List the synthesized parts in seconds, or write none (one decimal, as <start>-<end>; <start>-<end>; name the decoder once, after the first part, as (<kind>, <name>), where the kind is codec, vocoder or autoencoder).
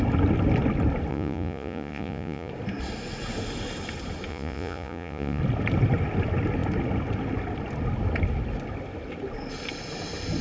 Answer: 1.1-2.5 (vocoder, Vocos); 4.3-5.4